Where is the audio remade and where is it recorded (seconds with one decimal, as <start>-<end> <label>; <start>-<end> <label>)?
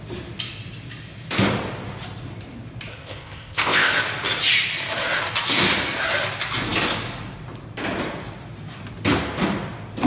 0.0-2.9 recorded; 2.9-3.9 remade; 3.9-10.1 recorded